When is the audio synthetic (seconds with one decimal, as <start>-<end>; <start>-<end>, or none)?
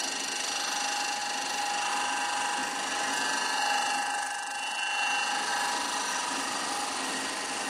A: 5.5-6.1